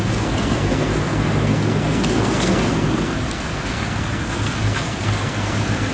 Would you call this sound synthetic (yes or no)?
yes